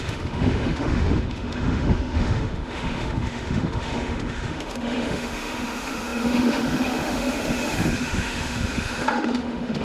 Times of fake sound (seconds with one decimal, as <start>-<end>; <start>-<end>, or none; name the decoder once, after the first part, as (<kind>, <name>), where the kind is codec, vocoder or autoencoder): 0.0-9.8 (autoencoder, DAC-VAE)